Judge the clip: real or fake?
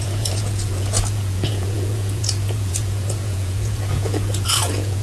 fake